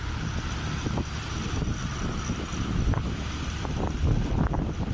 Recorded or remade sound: recorded